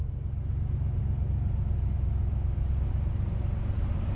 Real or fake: real